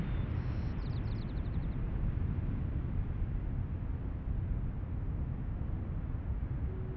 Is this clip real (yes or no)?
yes